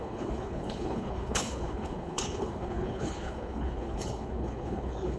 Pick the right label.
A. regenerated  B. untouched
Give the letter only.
A